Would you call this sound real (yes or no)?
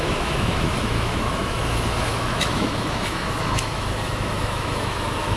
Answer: no